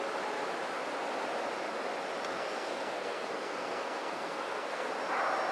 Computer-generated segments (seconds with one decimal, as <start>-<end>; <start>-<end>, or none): 2.3-4.9

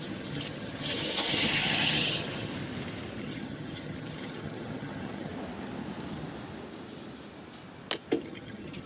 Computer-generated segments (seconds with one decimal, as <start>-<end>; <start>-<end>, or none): 0.0-2.5; 3.2-5.3; 8.2-8.9

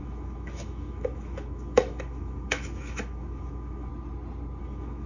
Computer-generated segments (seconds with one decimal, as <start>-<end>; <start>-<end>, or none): 0.0-3.9; 4.6-5.1

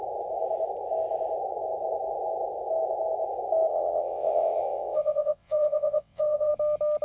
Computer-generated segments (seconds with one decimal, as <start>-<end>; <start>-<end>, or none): 3.7-6.5

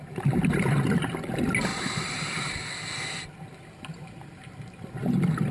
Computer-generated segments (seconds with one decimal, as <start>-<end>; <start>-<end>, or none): 1.7-2.6

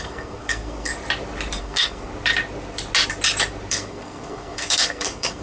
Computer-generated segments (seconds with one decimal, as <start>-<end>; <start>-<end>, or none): 0.0-0.9; 1.6-2.1; 3.7-5.4

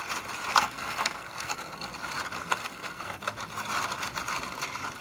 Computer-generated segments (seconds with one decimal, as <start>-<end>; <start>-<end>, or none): 0.5-1.9; 2.4-3.2

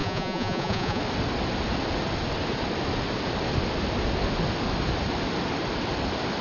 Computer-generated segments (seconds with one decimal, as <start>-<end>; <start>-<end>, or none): 0.0-1.0